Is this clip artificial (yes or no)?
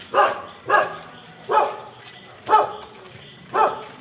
yes